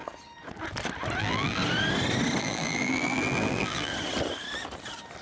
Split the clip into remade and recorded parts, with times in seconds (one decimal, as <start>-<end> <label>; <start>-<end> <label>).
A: 0.0-1.2 recorded; 1.2-1.6 remade; 1.6-2.4 recorded; 2.4-3.9 remade; 3.9-5.2 recorded